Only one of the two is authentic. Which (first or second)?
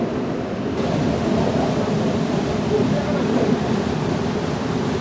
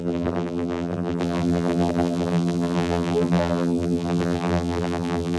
first